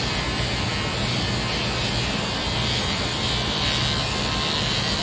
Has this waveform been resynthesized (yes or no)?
no